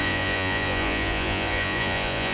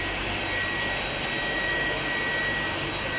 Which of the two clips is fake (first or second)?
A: first